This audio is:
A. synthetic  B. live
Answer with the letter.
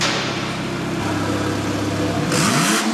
B